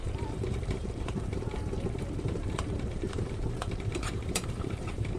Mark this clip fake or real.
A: fake